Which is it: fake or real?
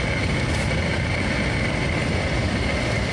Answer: real